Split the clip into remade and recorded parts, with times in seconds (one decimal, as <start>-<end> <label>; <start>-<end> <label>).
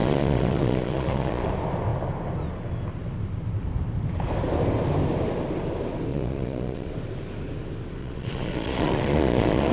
0.0-1.5 remade; 1.5-6.1 recorded; 6.1-6.9 remade; 6.9-8.0 recorded; 8.0-9.7 remade